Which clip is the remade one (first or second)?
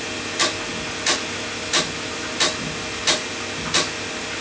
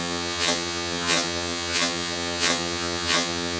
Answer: second